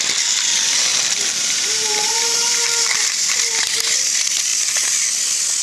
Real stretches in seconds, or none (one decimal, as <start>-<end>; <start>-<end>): 0.0-0.9; 3.3-5.6